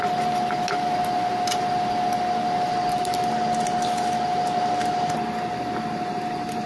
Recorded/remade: recorded